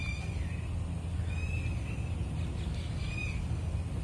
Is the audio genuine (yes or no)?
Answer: yes